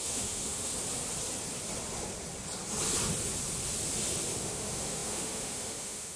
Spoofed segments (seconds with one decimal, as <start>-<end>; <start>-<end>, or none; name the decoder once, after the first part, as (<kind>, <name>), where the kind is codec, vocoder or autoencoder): 0.0-0.7 (autoencoder, DAC-VAE); 4.4-6.2